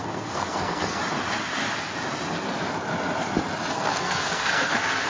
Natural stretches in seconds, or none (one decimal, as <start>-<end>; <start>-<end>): 1.0-3.7